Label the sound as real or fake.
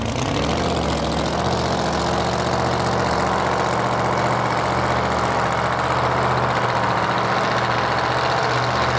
real